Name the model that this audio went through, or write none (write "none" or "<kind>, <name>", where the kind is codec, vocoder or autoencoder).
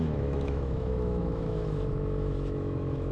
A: autoencoder, DAC-VAE